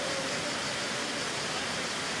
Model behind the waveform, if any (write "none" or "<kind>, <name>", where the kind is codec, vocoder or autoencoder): none